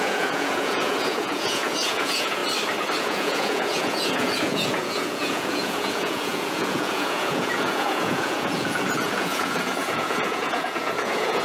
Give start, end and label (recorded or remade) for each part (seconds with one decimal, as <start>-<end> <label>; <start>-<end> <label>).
0.0-2.4 remade; 2.4-3.0 recorded; 3.0-11.4 remade